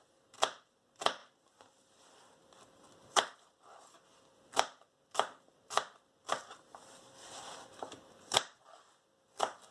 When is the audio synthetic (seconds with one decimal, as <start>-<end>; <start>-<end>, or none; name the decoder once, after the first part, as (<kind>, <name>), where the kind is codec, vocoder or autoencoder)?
none